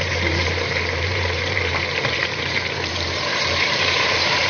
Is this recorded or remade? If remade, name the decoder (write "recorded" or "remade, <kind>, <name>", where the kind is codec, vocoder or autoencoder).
remade, vocoder, BigVGAN v2